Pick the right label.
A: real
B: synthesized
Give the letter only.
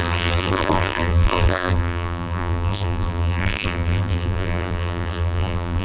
B